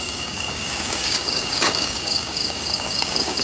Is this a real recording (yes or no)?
no